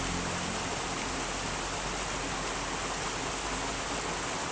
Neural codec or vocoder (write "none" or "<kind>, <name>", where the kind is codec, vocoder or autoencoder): none